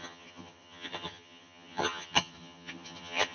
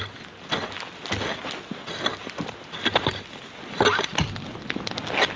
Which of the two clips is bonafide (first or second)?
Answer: second